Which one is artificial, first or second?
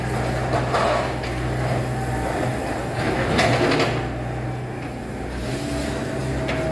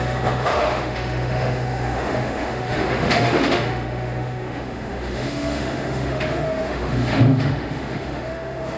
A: second